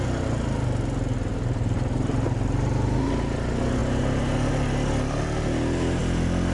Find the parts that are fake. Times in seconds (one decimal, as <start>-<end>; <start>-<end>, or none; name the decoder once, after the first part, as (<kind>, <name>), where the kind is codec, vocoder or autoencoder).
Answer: 1.3-3.1 (vocoder, BigVGAN v2)